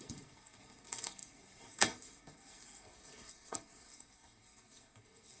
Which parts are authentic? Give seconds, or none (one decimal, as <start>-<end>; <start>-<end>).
none